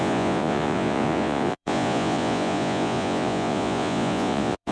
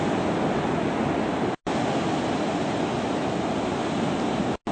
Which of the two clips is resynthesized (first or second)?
first